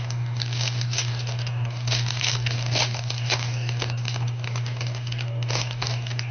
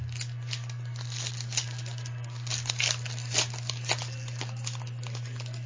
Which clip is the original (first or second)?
second